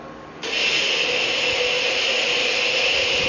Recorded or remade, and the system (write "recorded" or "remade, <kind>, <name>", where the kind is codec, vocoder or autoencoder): recorded